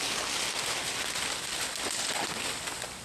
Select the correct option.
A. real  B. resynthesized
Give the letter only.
A